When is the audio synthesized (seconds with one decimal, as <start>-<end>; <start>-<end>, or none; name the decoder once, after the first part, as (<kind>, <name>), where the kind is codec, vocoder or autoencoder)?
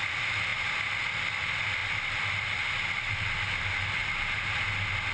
none